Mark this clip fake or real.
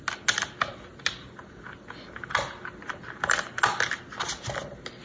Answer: real